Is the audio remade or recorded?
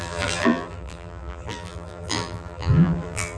remade